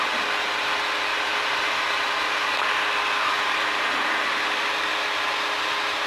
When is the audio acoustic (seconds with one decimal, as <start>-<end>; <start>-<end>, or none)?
0.0-1.1; 2.5-3.3; 4.3-6.1